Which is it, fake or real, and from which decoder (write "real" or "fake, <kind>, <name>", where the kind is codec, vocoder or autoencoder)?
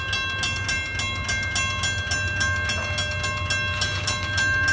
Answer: real